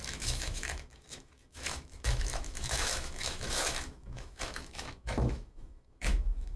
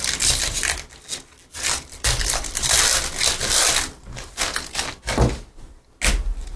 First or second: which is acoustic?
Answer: second